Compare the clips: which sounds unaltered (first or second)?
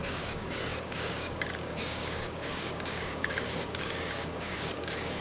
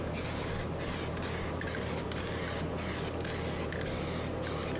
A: second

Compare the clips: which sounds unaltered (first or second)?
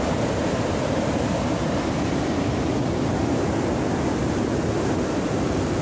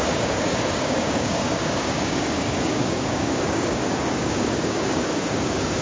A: first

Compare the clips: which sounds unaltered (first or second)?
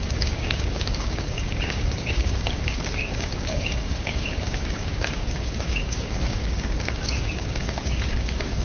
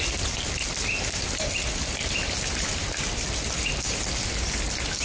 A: second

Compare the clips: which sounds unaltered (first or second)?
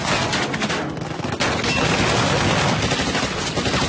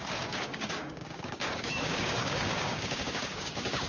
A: first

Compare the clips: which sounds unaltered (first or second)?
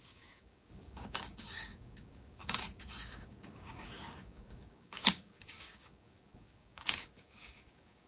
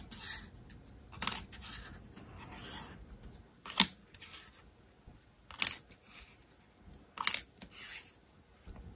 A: second